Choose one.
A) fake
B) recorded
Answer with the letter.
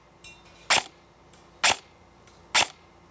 B